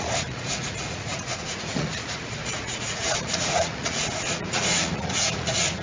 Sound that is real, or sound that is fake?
fake